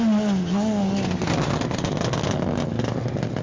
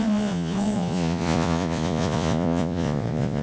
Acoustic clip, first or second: first